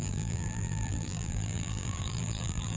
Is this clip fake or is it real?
fake